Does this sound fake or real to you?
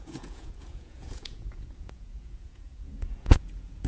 fake